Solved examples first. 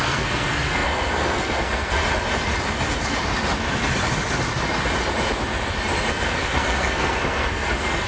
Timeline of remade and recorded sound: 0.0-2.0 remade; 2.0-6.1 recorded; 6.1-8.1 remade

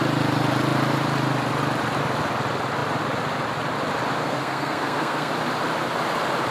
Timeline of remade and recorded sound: 0.0-4.2 recorded; 4.2-5.3 remade; 5.3-6.5 recorded

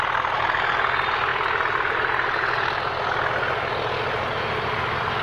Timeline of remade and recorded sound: 0.0-5.2 recorded

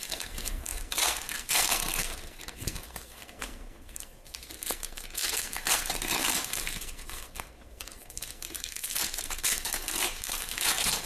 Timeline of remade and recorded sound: 0.0-11.1 remade